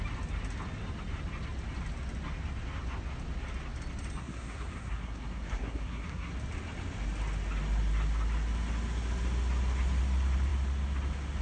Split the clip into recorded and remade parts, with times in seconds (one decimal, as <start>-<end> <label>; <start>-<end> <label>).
0.0-4.2 recorded; 4.2-6.3 remade; 6.3-11.4 recorded